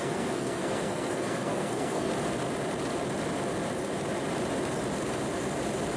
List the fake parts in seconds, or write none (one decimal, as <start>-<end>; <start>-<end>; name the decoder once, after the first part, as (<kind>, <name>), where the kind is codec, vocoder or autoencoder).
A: 0.0-2.1 (codec, SNAC)